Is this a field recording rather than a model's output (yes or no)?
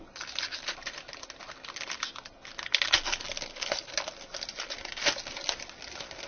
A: yes